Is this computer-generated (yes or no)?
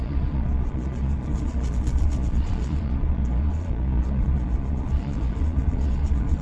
yes